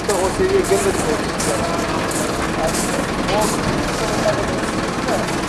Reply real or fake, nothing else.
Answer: real